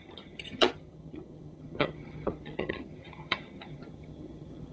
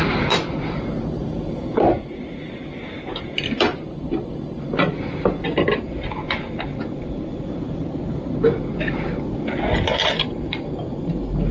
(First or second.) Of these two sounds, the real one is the second